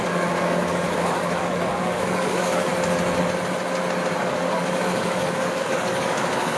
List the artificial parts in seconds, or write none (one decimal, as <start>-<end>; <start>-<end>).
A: 0.0-2.7; 4.2-6.6